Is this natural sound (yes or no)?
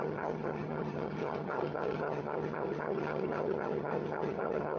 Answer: no